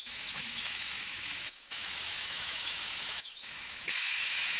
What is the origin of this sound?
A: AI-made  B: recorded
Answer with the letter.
A